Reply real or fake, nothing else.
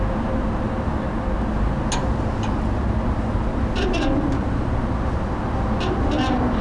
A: real